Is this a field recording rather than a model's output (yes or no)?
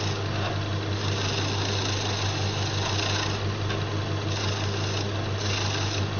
yes